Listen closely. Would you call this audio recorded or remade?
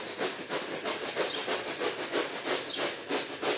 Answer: recorded